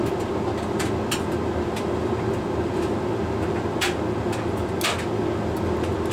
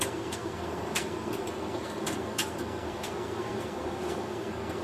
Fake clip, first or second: second